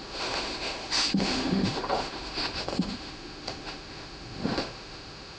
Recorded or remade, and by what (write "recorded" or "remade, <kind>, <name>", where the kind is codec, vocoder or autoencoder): remade, autoencoder, DAC-VAE